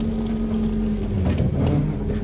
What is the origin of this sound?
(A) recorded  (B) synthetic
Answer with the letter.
A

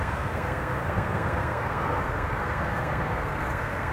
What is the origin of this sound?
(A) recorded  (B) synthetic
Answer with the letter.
B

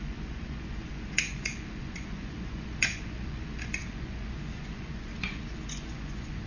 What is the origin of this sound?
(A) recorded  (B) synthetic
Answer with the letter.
B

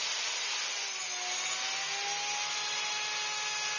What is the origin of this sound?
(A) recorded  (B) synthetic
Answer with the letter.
A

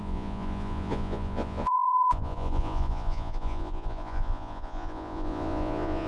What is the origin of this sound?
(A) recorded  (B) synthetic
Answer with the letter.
B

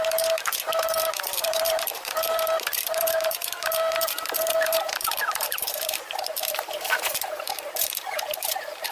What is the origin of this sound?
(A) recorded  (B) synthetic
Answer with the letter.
B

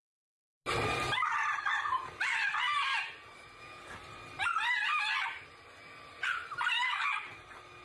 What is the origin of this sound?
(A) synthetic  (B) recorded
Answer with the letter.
B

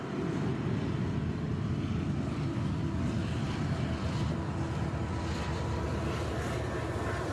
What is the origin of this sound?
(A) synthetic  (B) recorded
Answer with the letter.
B